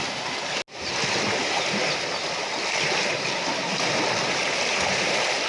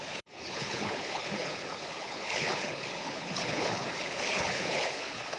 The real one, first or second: first